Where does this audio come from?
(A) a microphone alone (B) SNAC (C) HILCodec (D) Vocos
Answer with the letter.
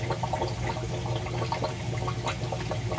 A